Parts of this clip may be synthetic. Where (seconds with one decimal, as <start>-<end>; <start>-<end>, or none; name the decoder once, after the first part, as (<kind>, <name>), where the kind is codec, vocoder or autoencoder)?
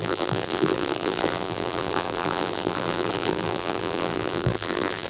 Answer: 0.0-5.1 (vocoder, BigVGAN v2)